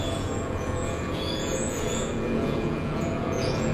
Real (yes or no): no